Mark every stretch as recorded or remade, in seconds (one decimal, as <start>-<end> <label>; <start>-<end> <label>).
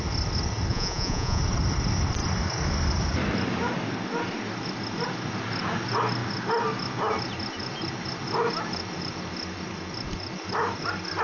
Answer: 0.0-0.7 recorded; 0.7-1.4 remade; 1.4-11.2 recorded